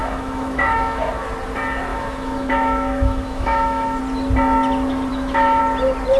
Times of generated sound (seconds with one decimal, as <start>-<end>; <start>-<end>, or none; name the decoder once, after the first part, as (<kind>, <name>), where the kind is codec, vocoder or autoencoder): 0.0-1.1 (autoencoder, DAC-VAE); 1.9-4.0; 5.1-5.6